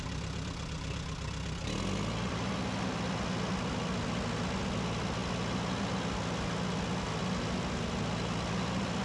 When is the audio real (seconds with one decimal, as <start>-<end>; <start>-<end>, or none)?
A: 0.0-9.0